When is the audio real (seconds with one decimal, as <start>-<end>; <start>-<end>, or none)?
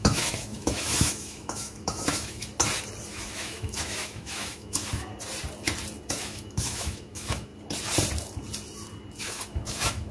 2.5-3.1; 5.1-6.1; 7.5-9.2